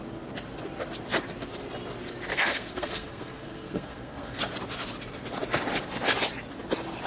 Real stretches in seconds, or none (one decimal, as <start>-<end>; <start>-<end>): 0.0-2.3; 4.4-7.1

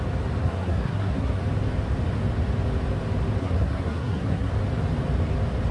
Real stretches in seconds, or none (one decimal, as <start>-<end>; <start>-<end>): 0.0-0.4; 1.4-3.4; 4.5-5.7

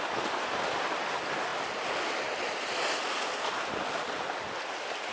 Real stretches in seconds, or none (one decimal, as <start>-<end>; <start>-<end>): 0.0-5.1

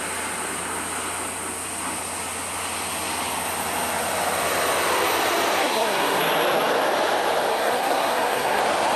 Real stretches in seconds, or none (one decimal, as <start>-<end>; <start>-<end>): 0.0-5.6; 6.2-7.5; 8.6-9.0

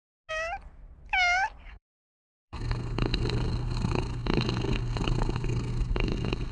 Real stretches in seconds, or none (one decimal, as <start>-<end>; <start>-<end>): 0.0-1.7

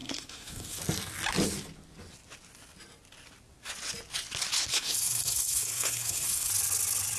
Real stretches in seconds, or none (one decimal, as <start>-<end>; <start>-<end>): 0.8-4.7; 6.5-7.2

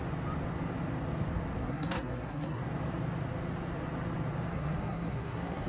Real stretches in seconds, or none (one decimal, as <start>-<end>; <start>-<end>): 0.0-1.6; 2.6-4.5

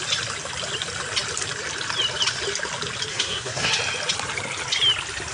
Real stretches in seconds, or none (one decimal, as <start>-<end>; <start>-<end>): 0.0-3.1; 3.7-5.3